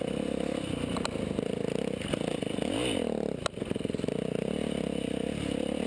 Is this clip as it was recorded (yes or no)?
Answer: yes